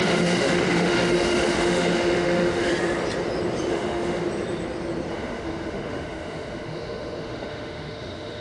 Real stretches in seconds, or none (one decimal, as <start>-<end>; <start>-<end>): 2.7-3.7; 4.2-5.1